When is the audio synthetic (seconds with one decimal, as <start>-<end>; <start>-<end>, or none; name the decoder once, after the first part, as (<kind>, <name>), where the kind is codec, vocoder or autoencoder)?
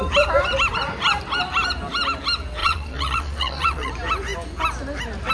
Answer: 2.6-3.9 (vocoder, Vocos)